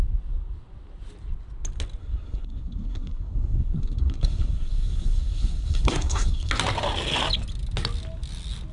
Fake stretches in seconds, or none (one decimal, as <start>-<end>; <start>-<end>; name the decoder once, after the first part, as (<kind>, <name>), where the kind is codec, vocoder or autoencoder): 2.0-6.5 (codec, SNAC)